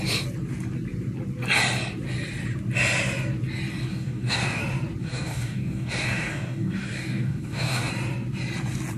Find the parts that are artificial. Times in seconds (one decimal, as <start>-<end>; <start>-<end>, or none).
3.9-4.6; 5.0-7.9